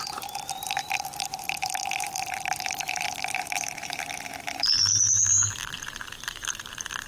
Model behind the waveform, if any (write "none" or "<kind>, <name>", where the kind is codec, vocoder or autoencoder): vocoder, BigVGAN v2